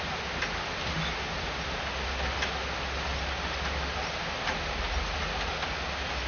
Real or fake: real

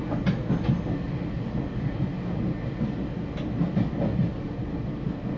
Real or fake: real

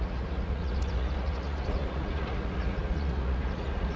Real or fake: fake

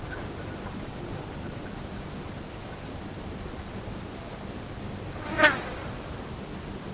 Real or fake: real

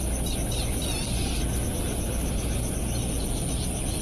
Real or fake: real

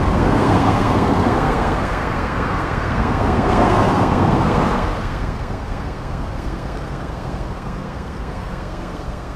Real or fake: fake